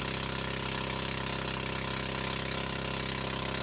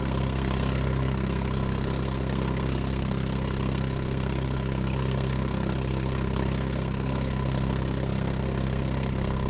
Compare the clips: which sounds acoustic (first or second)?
first